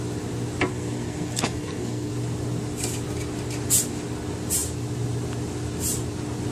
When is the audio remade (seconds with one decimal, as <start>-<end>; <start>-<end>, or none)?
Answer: 0.7-2.1